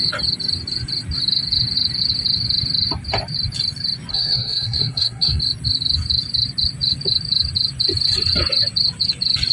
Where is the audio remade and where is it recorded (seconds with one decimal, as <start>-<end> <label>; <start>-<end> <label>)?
0.0-4.1 recorded; 4.1-5.4 remade; 5.4-9.5 recorded